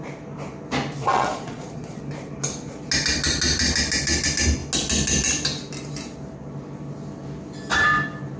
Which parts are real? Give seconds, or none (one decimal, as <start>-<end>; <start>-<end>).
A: 0.0-1.0; 2.0-8.4